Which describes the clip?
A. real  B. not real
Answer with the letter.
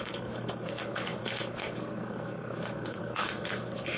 B